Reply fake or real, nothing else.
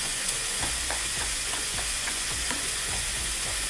fake